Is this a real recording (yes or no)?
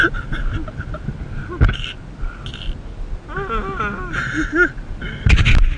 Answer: yes